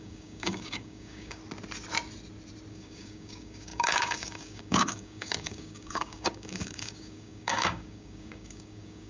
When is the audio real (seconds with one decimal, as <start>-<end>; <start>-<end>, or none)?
1.4-2.7